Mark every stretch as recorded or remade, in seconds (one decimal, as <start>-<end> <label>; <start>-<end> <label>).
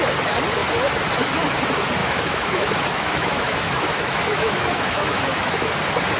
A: 0.0-2.0 recorded; 2.0-5.7 remade; 5.7-6.2 recorded